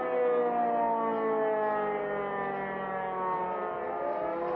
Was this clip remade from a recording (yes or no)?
no